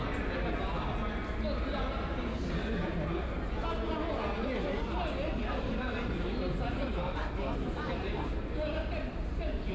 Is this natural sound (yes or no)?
yes